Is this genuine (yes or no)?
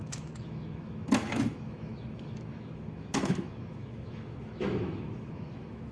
no